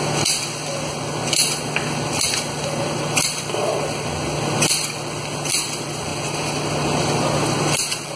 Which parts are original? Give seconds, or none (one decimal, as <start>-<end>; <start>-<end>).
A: 0.0-8.2